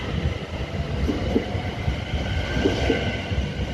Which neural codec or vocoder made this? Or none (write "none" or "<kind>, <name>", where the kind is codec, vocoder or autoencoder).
none